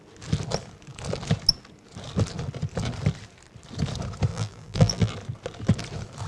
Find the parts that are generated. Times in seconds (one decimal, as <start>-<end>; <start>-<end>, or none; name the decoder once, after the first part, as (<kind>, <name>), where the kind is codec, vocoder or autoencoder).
4.3-5.1 (vocoder, BigVGAN v2)